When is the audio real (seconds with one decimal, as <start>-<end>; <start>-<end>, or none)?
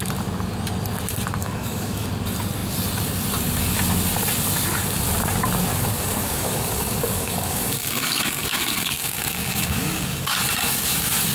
0.0-1.4; 2.1-5.7; 10.4-11.3